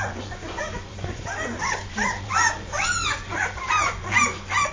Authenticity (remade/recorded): remade